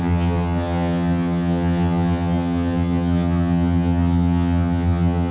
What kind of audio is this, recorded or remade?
remade